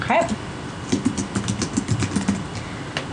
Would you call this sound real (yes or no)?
yes